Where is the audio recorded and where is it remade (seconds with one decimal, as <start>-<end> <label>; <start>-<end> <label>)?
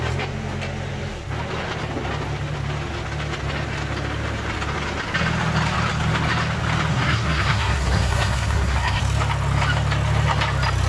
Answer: 0.0-6.9 recorded; 6.9-9.0 remade; 9.0-10.9 recorded